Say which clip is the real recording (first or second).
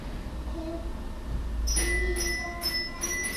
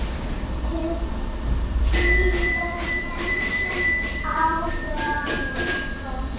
first